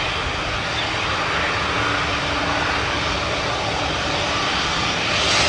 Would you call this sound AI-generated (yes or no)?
no